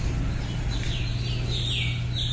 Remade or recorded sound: recorded